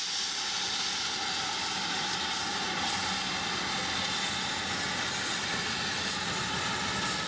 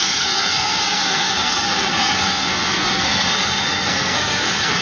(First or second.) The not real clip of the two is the second